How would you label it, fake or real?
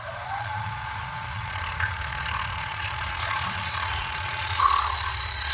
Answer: fake